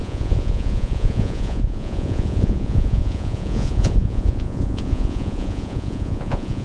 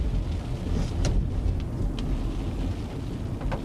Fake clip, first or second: first